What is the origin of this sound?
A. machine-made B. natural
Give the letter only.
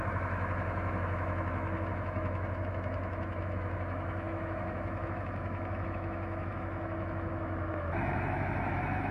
A